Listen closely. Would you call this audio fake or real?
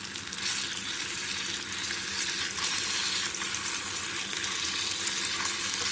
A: real